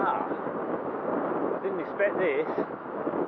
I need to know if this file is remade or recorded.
recorded